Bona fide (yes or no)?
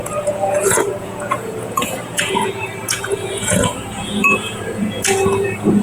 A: no